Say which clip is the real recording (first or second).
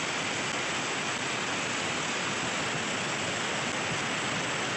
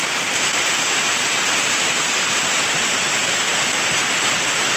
first